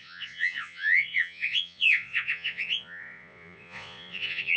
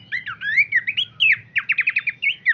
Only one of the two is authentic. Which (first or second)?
second